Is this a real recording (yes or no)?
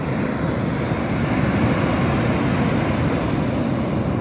yes